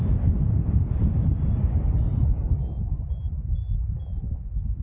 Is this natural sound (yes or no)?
yes